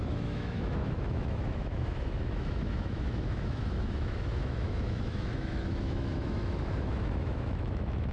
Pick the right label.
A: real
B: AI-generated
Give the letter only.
B